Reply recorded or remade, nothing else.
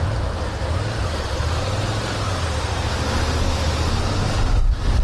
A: recorded